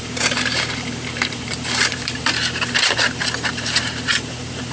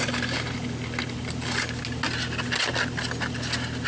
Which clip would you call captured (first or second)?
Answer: second